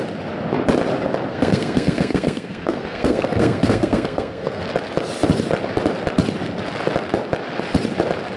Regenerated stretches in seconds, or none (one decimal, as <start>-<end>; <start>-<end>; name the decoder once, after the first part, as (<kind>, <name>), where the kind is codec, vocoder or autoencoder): 1.3-4.6 (codec, SNAC)